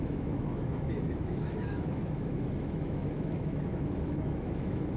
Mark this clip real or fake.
fake